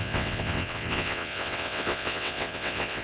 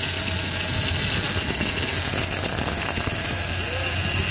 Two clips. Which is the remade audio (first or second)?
first